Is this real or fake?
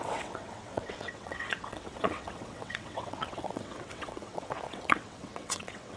fake